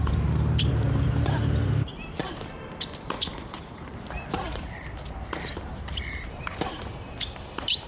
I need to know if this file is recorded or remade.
remade